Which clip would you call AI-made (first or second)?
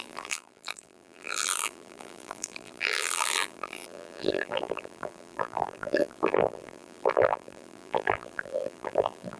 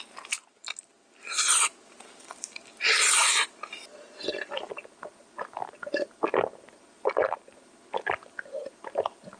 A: first